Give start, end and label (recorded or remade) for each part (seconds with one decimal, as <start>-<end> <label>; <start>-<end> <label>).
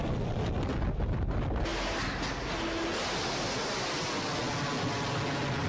0.0-5.7 recorded